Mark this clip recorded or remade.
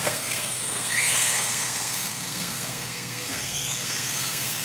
remade